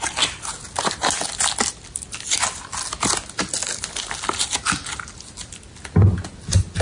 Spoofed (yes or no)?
no